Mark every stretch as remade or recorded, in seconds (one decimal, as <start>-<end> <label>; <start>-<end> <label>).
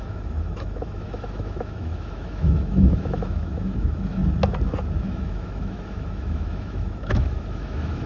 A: 0.0-4.2 remade; 4.2-5.0 recorded; 5.0-8.1 remade